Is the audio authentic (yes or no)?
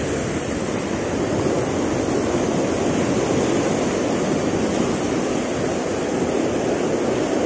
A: yes